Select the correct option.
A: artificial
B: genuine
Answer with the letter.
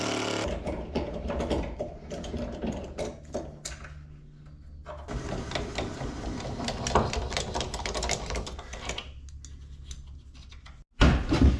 B